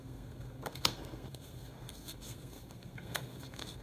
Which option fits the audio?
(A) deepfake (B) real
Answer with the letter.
A